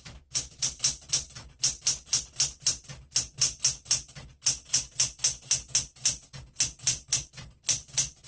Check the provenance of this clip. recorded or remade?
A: recorded